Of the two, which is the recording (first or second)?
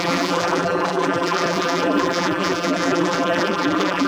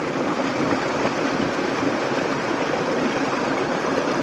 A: second